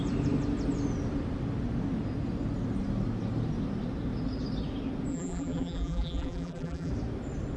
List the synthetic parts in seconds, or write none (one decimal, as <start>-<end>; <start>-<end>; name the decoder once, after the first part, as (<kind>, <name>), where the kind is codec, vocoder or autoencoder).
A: 5.1-6.9 (vocoder, BigVGAN v2)